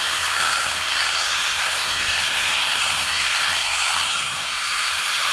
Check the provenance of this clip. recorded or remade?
remade